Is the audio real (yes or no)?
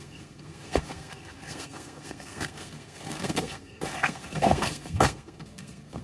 no